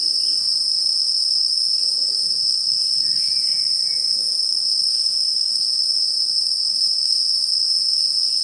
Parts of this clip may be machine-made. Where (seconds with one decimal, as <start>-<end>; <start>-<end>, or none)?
0.7-3.3; 4.2-8.0